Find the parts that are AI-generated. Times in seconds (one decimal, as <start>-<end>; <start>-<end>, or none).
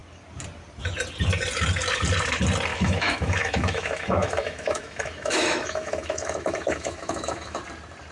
2.7-7.6